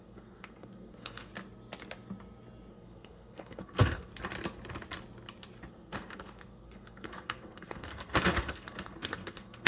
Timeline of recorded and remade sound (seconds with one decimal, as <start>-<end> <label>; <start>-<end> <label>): 0.0-1.3 remade; 1.3-2.7 recorded; 2.7-4.1 remade; 4.1-5.7 recorded; 5.7-9.7 remade